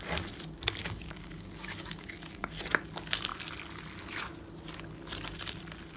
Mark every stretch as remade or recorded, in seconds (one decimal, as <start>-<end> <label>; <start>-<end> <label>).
0.0-0.8 recorded; 0.8-2.5 remade; 2.5-6.0 recorded